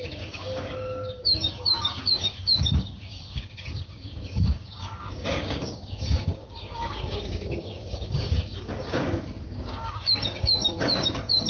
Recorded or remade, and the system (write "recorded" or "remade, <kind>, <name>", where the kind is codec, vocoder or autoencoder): remade, codec, DAC